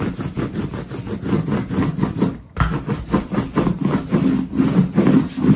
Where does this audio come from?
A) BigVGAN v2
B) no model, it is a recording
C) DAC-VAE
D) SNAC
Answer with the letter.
B